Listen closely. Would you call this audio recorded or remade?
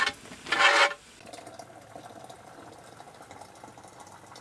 recorded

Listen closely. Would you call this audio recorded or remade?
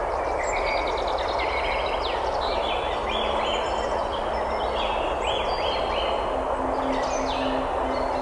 recorded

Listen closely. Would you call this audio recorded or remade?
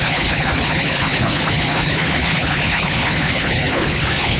remade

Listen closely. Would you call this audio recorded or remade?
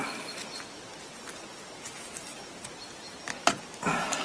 recorded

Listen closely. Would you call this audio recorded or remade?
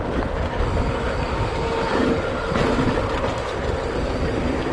recorded